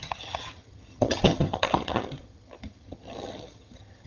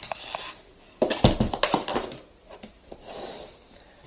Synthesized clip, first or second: first